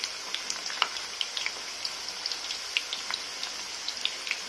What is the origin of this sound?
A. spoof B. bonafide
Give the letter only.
B